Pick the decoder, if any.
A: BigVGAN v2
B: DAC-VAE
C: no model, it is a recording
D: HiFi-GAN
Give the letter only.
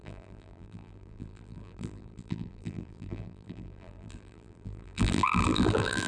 A